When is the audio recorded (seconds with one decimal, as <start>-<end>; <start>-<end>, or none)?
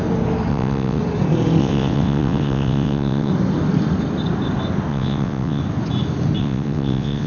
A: 0.0-0.5; 1.0-1.6; 3.3-4.9; 5.6-6.4